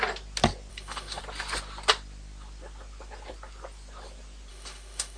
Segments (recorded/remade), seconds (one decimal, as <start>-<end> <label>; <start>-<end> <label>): 0.0-0.7 recorded; 0.7-1.2 remade; 1.2-4.5 recorded; 4.5-5.2 remade